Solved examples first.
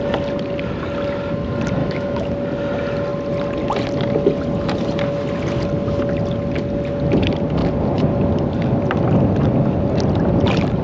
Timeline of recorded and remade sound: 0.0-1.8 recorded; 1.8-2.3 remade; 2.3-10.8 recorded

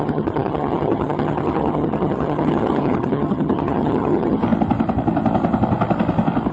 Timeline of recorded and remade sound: 0.0-4.4 remade; 4.4-6.5 recorded

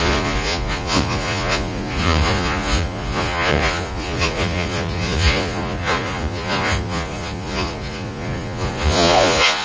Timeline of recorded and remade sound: 0.0-9.6 remade

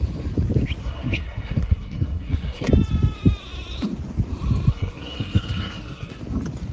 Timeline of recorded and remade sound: 0.0-0.8 recorded; 0.8-2.7 remade; 2.7-4.7 recorded; 4.7-6.1 remade; 6.1-6.7 recorded